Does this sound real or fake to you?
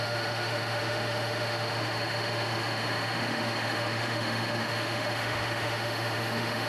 fake